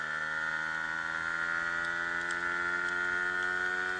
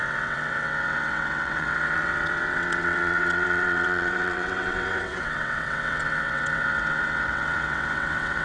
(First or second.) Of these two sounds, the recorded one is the first